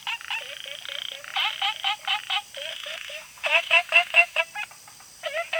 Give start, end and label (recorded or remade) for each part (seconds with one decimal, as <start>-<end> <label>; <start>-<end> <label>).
0.0-2.7 recorded; 2.7-4.4 remade; 4.4-5.6 recorded